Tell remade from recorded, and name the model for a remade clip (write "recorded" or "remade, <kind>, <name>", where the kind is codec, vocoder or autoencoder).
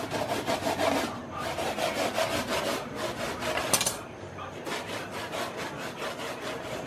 recorded